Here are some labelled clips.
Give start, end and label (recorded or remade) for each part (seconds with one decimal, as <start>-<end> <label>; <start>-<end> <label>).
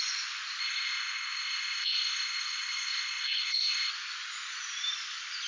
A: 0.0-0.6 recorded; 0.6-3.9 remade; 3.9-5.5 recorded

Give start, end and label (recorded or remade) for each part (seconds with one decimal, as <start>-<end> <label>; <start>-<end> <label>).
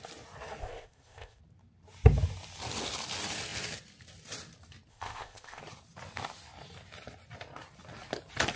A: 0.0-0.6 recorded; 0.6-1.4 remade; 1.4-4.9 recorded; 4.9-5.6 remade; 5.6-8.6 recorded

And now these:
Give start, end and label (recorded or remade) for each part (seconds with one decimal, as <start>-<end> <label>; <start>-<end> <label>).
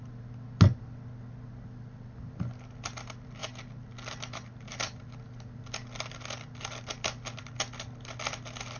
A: 0.0-8.8 recorded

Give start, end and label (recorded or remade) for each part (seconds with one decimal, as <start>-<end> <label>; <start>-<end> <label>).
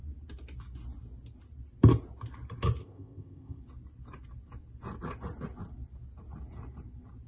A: 0.0-2.8 recorded; 2.8-3.6 remade; 3.6-7.3 recorded